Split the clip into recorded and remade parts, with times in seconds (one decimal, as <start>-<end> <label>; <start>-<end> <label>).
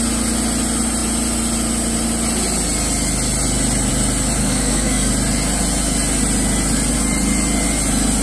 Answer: 0.0-4.4 recorded; 4.4-5.1 remade; 5.1-8.2 recorded